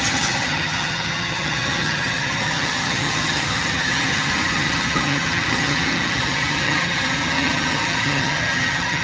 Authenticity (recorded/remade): remade